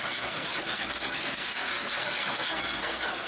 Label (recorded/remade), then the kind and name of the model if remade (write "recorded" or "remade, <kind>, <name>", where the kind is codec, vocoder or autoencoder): remade, codec, SNAC